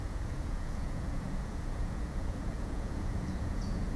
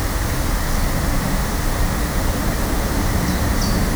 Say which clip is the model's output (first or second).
first